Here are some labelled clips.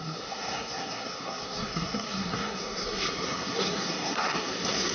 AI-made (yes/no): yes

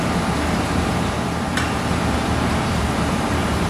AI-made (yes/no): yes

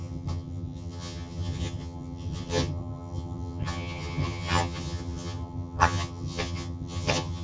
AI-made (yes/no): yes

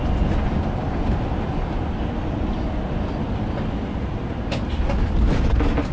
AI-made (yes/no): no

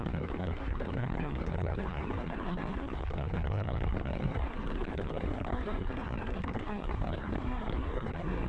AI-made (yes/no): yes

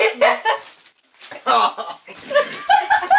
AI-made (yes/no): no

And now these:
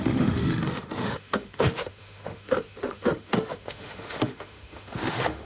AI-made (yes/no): yes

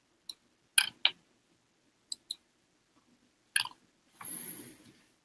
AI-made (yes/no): no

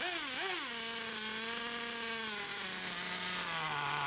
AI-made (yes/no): no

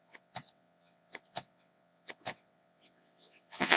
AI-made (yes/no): yes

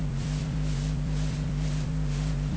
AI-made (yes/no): yes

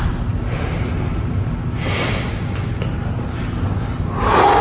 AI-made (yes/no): no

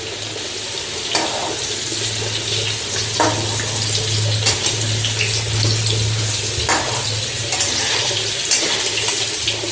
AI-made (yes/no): no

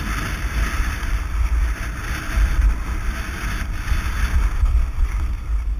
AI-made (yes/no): yes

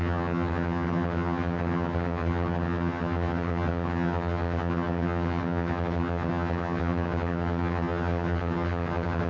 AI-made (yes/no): yes